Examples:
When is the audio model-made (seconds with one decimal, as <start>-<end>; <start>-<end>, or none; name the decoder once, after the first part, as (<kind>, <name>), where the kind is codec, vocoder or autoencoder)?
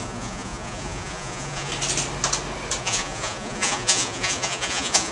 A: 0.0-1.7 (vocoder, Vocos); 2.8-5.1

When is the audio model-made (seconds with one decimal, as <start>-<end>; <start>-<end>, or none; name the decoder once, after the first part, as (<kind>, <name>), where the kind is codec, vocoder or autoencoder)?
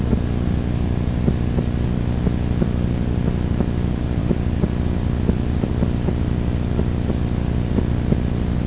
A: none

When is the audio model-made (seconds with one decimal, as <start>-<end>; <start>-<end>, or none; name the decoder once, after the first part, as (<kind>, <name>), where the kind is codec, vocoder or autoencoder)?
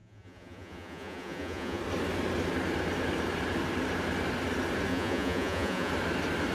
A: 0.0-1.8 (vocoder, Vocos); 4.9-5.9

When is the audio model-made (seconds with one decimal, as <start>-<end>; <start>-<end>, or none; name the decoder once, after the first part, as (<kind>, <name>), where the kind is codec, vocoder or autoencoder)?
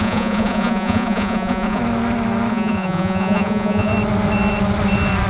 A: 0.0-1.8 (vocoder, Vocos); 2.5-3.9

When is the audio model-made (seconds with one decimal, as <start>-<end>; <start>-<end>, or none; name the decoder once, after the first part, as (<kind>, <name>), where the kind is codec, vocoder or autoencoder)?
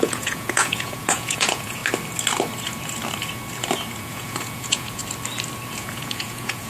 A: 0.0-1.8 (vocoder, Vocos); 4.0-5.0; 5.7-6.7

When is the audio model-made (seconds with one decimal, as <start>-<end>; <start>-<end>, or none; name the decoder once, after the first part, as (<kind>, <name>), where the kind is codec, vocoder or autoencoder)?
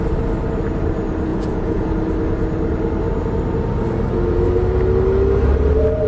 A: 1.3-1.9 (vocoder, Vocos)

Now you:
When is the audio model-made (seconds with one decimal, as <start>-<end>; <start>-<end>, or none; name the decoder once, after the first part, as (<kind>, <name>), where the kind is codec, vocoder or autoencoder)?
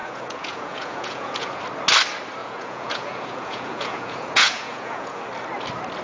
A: 0.0-1.6 (vocoder, Vocos); 2.4-5.2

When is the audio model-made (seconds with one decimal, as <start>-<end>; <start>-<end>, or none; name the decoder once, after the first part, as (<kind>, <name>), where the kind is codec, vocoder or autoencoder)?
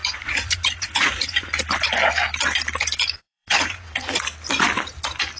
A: 0.0-1.5 (vocoder, Vocos); 3.2-4.2